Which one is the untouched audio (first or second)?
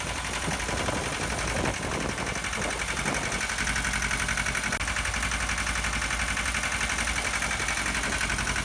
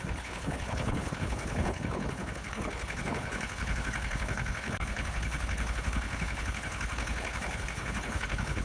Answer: first